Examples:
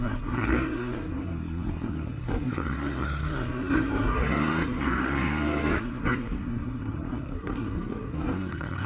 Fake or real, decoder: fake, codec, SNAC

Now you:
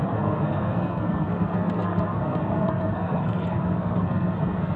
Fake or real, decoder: fake, codec, SNAC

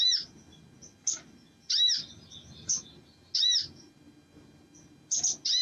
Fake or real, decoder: real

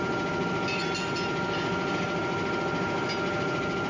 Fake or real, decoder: real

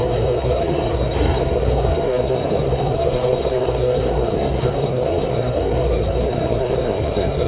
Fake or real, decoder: fake, codec, SNAC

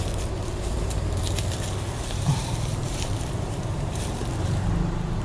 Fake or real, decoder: fake, vocoder, BigVGAN v2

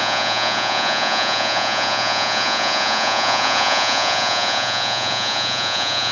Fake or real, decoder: fake, vocoder, Vocos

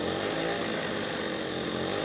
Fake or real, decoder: real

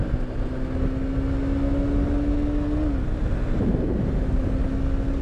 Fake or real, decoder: real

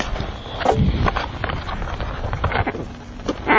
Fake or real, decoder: real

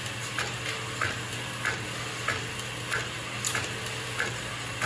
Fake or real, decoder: real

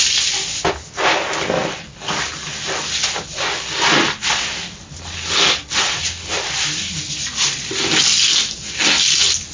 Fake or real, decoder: real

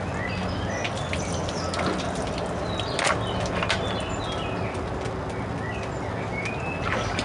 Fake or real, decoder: real